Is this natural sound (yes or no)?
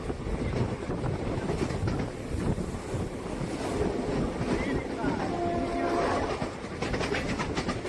yes